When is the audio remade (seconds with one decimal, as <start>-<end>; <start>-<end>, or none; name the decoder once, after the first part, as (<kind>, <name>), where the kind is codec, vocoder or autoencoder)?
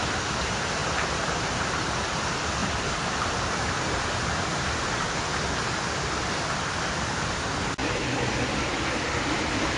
0.8-1.9 (vocoder, BigVGAN v2); 2.6-5.2